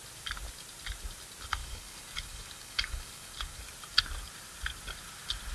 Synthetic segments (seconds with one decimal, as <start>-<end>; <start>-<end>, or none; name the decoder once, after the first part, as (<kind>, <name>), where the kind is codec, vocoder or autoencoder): 1.6-3.6 (codec, DAC)